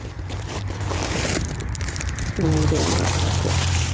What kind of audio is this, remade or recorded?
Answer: remade